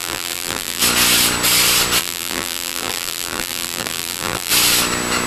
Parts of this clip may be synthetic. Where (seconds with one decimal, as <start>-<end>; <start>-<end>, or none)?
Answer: 0.0-0.8; 2.0-4.5